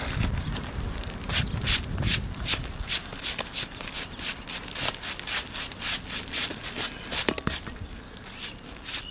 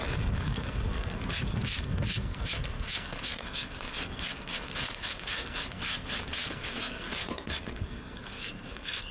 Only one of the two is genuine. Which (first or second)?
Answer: first